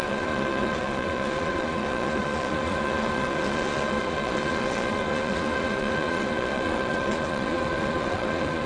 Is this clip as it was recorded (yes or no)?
no